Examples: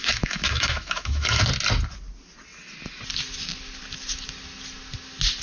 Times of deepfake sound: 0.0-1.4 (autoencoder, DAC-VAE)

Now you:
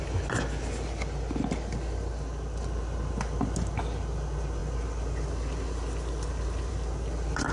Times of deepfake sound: none

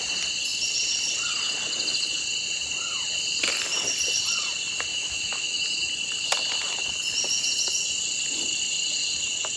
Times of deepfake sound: 4.9-5.6 (autoencoder, DAC-VAE)

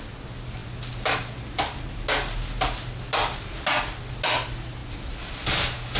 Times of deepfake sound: none

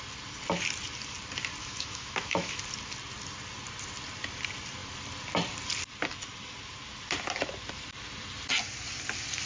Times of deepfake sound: 1.6-2.6 (autoencoder, DAC-VAE)

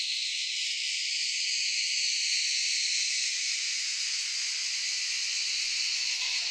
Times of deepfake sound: 0.0-2.2 (autoencoder, DAC-VAE); 3.1-4.3; 5.7-6.5